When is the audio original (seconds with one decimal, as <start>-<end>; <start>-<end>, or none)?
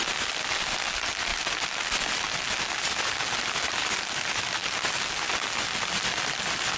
0.0-6.8